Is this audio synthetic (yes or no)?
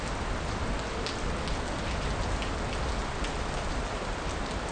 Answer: no